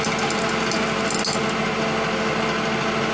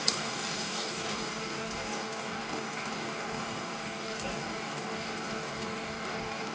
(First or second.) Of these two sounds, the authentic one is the first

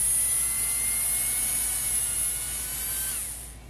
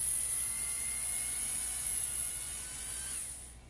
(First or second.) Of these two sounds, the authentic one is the first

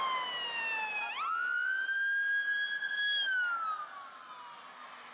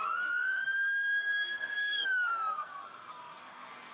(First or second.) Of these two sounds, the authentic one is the first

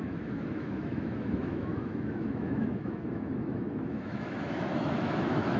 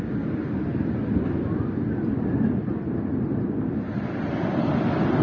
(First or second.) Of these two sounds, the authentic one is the second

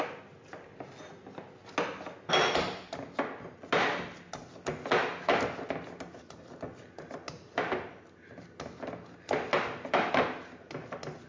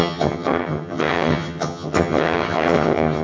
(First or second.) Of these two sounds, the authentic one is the first